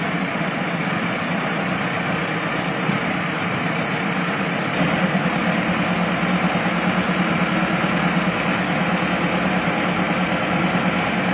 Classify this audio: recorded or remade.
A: recorded